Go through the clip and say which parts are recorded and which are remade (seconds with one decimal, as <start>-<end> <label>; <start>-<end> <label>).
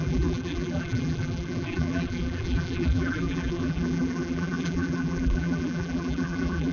0.0-6.7 remade